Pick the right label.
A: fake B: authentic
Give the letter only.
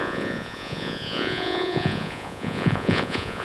A